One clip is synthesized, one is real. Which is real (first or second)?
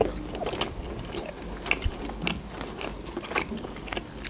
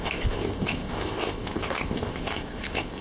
first